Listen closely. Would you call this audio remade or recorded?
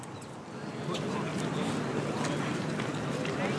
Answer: recorded